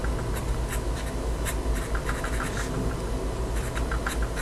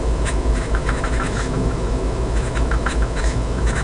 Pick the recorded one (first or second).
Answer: first